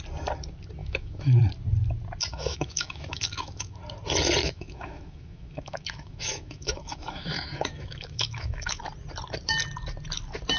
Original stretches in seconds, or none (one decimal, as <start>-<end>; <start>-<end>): 0.0-0.8; 1.4-2.3; 3.8-4.4; 8.8-10.6